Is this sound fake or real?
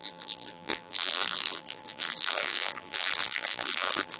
fake